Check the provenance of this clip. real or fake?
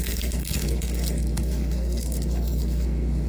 fake